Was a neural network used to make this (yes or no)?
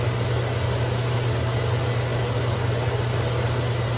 no